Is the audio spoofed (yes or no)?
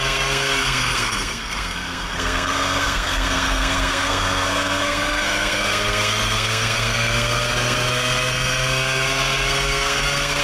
yes